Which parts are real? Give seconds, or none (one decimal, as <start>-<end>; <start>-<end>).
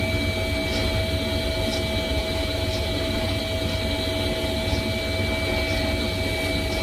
0.0-2.1; 3.4-6.8